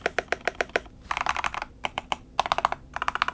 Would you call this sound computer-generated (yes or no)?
no